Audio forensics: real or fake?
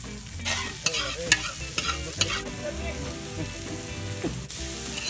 real